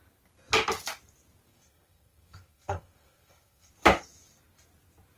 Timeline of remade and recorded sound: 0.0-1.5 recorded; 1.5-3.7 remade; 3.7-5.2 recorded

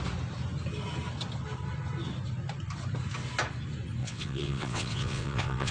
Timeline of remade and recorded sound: 0.0-4.0 recorded; 4.0-5.7 remade

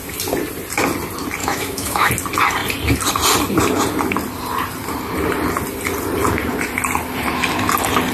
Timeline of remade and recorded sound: 0.0-1.4 recorded; 1.4-2.1 remade; 2.1-8.1 recorded

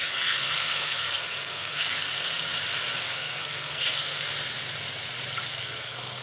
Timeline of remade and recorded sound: 0.0-2.3 remade; 2.3-3.0 recorded; 3.0-4.3 remade; 4.3-5.5 recorded; 5.5-6.2 remade

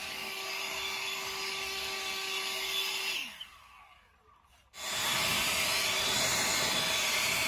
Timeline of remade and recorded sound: 0.0-4.1 remade; 4.1-7.5 recorded

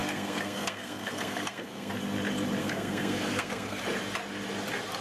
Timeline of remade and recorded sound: 0.0-1.9 remade; 1.9-2.6 recorded; 2.6-3.8 remade; 3.8-5.0 recorded

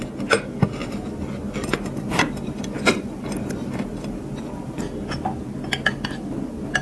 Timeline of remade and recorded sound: 0.0-0.8 recorded; 0.8-4.9 remade; 4.9-6.8 recorded

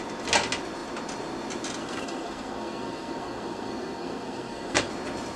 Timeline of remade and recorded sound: 0.0-1.8 recorded; 1.8-4.9 remade; 4.9-5.4 recorded